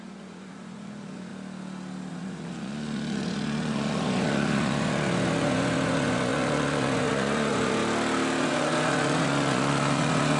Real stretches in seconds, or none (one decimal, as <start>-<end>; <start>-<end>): 1.3-2.1; 7.8-8.4